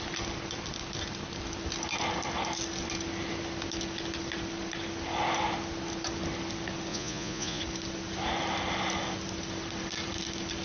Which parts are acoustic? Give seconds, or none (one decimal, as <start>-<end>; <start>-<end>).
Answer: 0.0-6.9; 7.6-10.6